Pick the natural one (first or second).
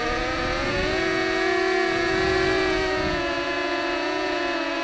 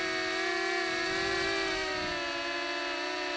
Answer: second